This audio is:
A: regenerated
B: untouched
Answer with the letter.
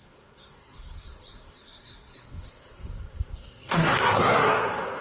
A